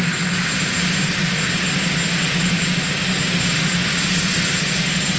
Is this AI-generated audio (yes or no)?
no